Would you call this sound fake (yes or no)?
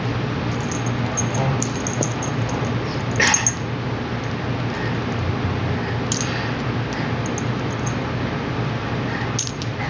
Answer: no